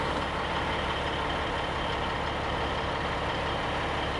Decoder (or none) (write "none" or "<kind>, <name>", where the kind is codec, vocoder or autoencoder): none